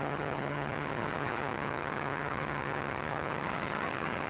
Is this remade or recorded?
remade